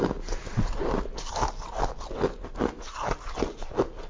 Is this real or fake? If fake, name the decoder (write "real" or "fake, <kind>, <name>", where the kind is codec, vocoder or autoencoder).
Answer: real